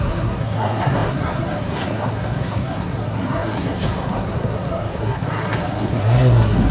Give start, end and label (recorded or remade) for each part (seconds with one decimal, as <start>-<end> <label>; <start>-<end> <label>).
0.0-6.7 remade